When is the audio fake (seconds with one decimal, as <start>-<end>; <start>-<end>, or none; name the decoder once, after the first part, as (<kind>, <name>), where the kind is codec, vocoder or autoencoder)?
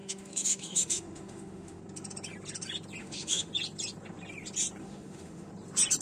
0.0-1.8 (autoencoder, DAC-VAE); 3.0-3.5; 4.8-5.5